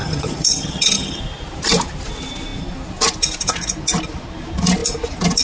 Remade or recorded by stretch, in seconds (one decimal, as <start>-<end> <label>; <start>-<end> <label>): 0.0-1.2 remade; 1.2-5.4 recorded